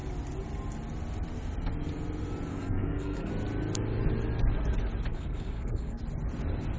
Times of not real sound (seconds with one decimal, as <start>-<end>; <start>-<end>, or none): 2.5-3.3; 5.1-6.0